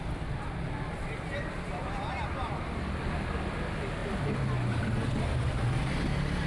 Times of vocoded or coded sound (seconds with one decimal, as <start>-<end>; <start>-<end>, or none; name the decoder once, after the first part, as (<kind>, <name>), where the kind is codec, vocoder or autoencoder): none